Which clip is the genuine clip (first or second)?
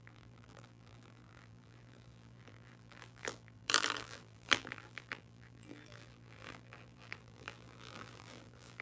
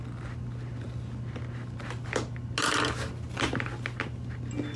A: second